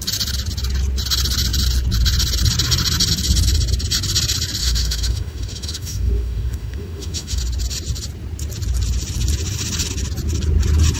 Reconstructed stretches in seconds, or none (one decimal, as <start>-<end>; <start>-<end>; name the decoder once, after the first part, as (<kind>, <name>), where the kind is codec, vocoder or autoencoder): 4.6-7.4 (autoencoder, DAC-VAE)